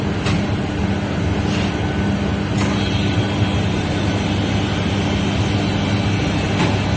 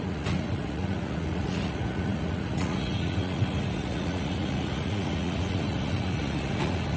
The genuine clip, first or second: first